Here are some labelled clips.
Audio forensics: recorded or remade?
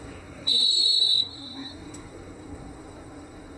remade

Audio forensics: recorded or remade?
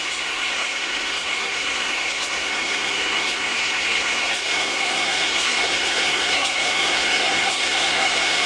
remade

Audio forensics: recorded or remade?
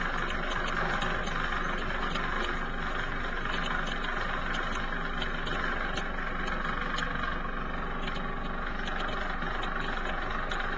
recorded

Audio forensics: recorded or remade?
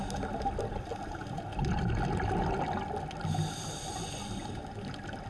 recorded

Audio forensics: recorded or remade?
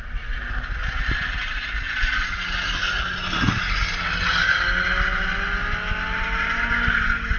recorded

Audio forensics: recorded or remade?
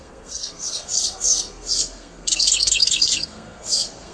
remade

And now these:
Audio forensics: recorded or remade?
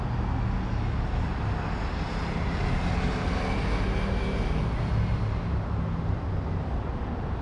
recorded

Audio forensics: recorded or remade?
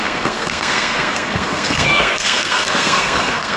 remade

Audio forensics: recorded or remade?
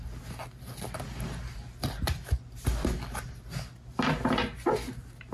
recorded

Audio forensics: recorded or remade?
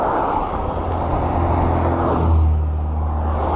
recorded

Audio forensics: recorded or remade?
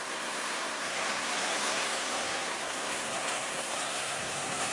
remade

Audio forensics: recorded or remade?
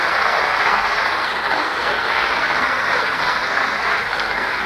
remade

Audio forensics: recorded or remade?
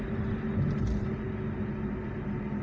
recorded